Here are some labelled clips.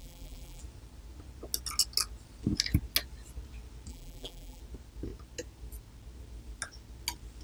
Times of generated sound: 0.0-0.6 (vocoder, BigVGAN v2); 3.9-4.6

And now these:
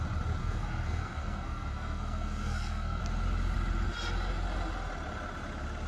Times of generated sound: 0.4-3.0 (codec, SNAC)